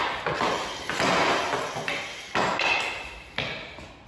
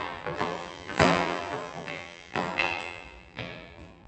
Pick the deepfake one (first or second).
second